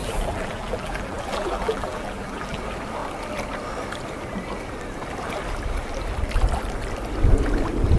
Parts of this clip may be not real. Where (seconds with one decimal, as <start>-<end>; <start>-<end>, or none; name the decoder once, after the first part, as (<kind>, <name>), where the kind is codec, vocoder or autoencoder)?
0.0-2.6 (vocoder, BigVGAN v2)